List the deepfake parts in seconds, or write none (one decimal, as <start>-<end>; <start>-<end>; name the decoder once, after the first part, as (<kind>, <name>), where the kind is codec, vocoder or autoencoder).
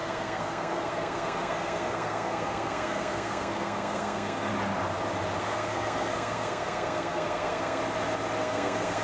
0.0-4.5 (codec, SNAC); 5.4-7.8; 8.4-9.0